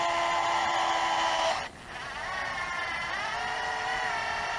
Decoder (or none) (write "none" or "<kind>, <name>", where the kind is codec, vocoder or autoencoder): none